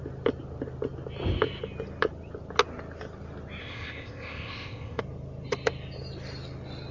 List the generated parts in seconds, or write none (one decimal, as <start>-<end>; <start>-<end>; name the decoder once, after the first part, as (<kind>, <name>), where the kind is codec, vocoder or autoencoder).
3.6-5.0 (codec, ZipCodec)